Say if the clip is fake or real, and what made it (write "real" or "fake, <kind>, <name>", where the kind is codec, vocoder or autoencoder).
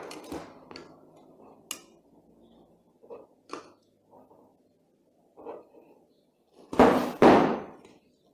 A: real